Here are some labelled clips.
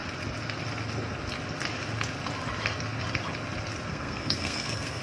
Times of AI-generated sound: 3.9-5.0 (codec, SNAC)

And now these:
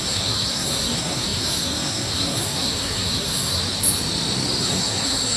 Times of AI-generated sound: 0.0-3.6 (codec, SNAC); 4.6-5.4

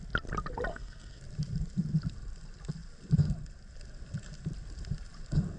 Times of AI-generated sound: 0.7-1.2 (codec, SNAC)